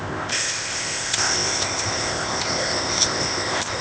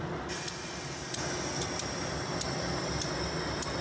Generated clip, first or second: first